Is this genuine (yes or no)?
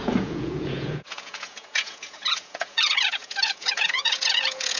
no